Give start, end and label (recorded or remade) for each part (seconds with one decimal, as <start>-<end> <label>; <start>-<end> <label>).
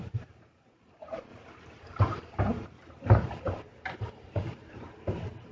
0.0-1.3 remade; 1.3-2.4 recorded; 2.4-5.5 remade